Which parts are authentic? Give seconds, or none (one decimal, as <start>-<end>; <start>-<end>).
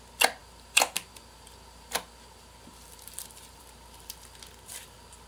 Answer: 0.0-0.4; 3.6-5.3